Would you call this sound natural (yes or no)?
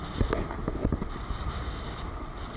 yes